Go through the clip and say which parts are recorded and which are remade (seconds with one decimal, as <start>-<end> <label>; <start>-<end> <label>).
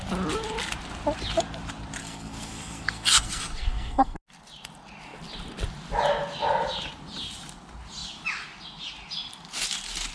0.0-2.0 recorded; 2.0-4.2 remade; 4.2-10.1 recorded